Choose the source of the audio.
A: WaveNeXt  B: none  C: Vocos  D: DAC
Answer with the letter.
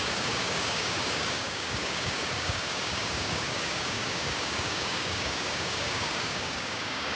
D